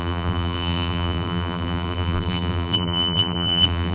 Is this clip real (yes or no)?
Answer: no